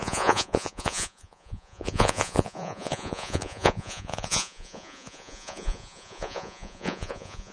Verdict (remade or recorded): remade